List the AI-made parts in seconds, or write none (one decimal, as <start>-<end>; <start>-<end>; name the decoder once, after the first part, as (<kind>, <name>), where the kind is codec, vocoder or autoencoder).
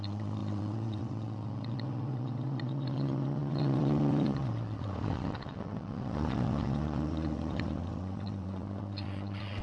0.0-9.6 (vocoder, WaveNeXt)